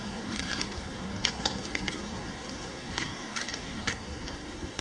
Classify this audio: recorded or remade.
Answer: remade